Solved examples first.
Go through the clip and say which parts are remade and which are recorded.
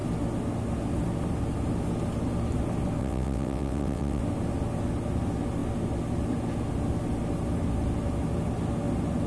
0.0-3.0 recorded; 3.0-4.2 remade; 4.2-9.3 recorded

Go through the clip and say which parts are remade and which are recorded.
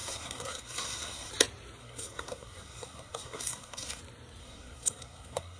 0.0-1.3 remade; 1.3-1.8 recorded; 1.8-4.0 remade; 4.0-4.4 recorded; 4.4-5.6 remade